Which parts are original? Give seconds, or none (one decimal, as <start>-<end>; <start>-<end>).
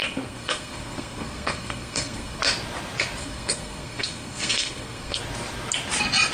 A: 2.4-3.2; 5.2-6.3